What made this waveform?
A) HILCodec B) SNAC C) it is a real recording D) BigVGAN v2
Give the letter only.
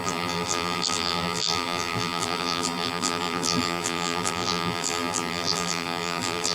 D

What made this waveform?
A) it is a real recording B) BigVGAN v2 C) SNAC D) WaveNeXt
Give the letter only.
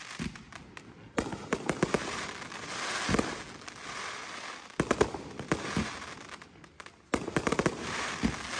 A